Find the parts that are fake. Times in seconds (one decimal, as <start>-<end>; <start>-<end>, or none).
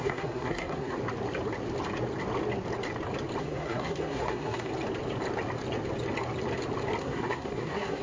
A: 0.0-1.0; 3.4-4.7; 7.0-8.0